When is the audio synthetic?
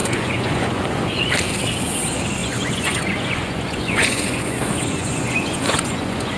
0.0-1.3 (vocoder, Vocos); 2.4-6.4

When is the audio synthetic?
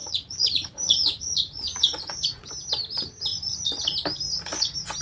0.0-2.5 (vocoder, Vocos); 3.3-3.8